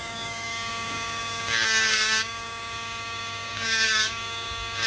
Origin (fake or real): fake